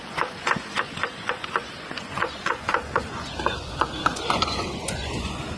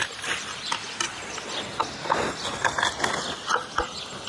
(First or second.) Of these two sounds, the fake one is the first